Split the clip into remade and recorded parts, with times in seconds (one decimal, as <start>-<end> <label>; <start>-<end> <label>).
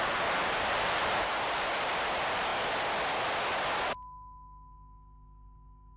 0.0-6.0 recorded